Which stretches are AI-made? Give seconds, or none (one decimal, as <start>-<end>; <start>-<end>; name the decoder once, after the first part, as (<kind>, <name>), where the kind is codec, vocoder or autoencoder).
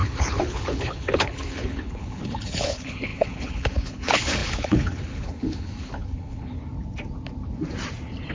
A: 0.0-6.6 (codec, HILCodec)